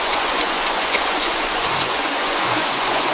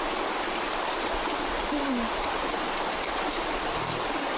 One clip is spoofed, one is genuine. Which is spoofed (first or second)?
first